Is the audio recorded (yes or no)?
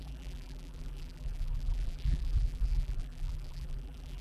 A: no